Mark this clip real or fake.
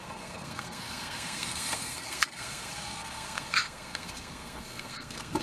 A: fake